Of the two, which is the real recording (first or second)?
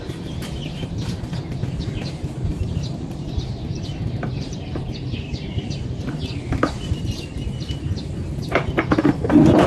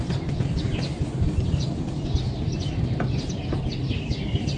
second